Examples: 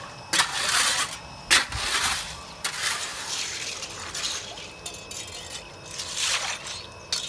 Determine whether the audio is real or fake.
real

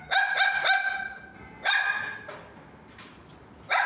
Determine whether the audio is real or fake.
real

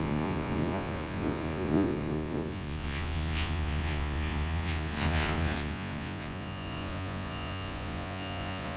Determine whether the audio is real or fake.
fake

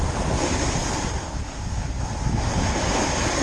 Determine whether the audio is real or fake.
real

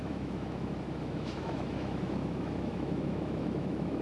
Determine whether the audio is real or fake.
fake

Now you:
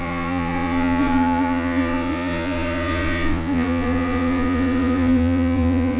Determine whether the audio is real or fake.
fake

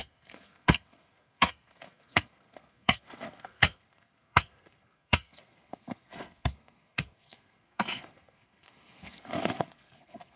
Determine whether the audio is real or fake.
fake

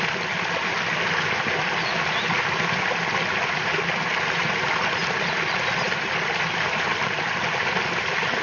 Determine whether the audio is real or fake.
real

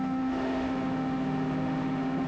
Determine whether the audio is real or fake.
fake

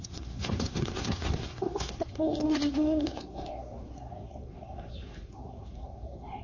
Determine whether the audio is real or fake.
fake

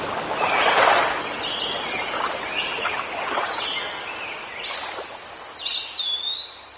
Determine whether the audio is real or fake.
real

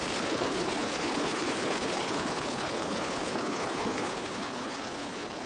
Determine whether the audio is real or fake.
fake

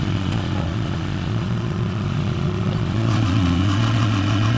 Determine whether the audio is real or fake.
fake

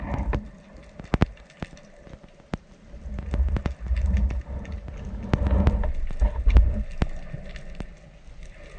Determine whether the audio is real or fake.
real